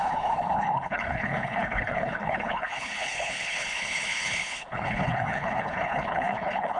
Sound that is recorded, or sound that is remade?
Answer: remade